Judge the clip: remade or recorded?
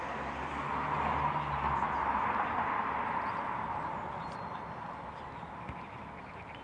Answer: recorded